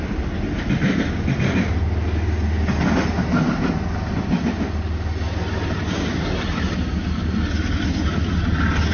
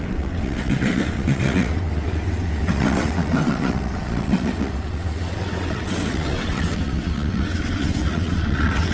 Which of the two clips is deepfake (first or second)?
second